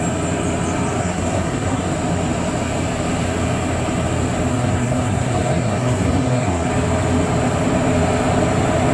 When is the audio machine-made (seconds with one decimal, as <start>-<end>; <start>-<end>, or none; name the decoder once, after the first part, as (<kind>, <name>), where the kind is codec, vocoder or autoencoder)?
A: 1.0-1.9 (codec, SNAC); 4.5-6.7